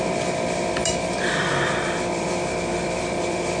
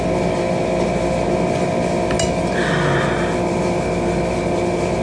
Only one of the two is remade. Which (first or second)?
first